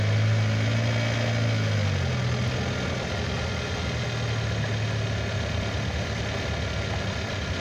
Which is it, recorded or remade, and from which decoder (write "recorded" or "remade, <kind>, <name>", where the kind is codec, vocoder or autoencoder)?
recorded